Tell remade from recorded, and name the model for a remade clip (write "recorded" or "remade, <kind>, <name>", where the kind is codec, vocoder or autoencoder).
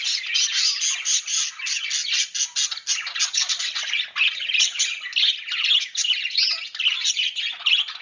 recorded